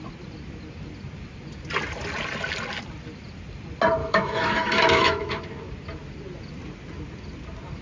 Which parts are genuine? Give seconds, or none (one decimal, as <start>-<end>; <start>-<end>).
0.0-4.0; 5.4-7.8